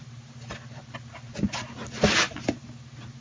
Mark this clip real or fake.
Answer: real